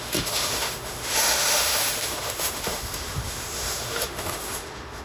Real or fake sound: fake